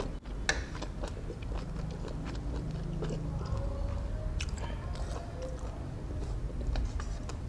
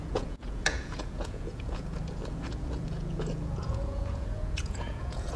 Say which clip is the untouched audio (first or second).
first